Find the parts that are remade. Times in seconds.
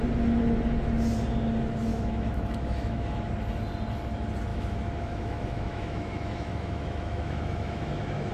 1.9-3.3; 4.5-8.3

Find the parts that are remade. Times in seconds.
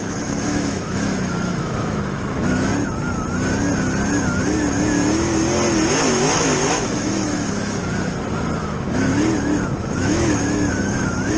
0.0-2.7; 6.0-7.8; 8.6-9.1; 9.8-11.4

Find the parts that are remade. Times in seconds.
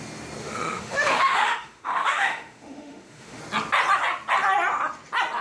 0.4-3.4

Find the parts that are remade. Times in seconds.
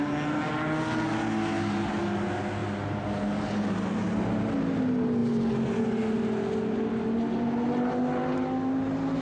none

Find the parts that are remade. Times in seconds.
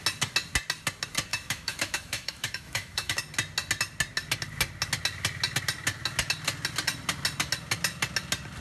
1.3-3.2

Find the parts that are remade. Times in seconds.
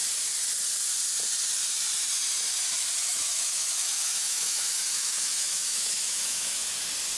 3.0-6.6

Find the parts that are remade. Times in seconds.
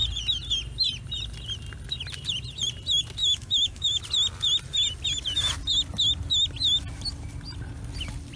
3.2-4.0